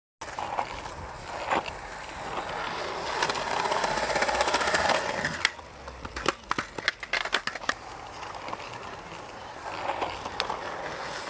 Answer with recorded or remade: recorded